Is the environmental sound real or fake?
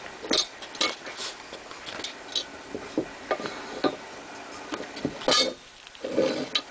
real